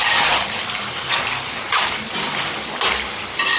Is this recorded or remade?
remade